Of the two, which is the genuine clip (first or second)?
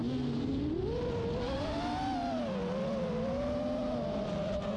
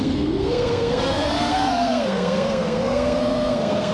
first